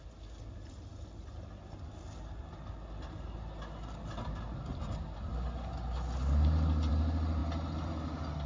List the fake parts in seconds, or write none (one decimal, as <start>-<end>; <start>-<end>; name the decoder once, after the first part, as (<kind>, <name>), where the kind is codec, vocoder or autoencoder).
none